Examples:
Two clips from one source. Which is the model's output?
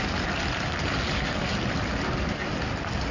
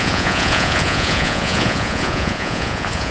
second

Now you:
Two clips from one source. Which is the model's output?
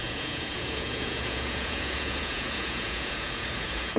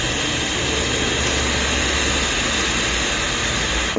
first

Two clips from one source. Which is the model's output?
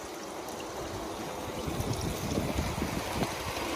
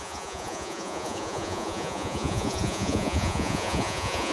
second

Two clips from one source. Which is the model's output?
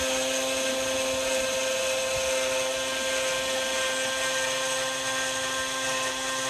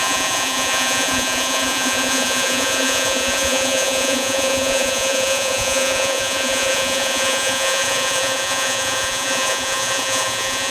second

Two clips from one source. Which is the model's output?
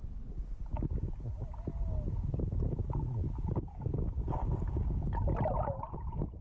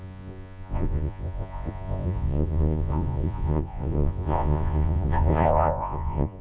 second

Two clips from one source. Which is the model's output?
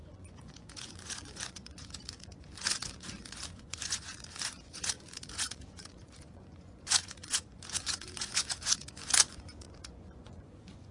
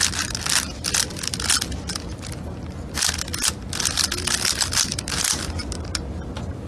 first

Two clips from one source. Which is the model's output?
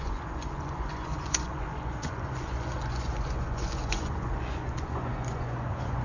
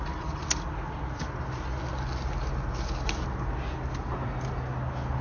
first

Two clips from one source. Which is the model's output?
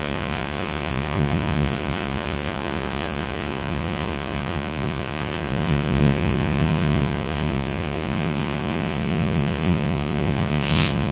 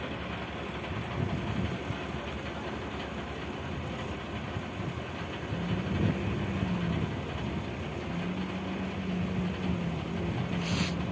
first